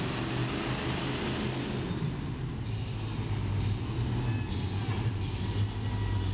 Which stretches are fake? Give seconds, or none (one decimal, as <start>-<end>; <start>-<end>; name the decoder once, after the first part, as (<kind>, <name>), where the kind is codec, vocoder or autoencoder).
none